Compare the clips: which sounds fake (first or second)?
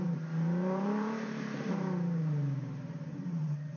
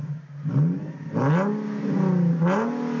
first